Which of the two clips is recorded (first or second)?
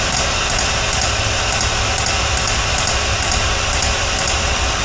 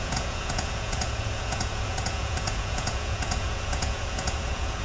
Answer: first